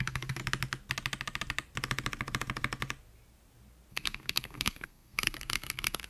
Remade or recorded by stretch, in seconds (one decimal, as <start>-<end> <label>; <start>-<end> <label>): 0.0-0.4 remade; 0.4-3.9 recorded; 3.9-6.1 remade